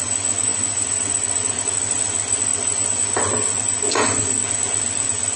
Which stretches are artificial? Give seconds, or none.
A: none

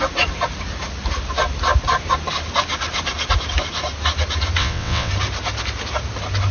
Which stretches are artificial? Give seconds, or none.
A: 4.6-5.1 (vocoder, WaveNeXt)